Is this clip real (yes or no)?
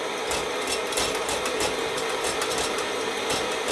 yes